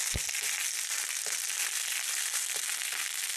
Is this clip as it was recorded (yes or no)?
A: yes